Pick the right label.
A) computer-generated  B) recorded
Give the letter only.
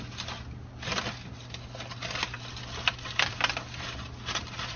B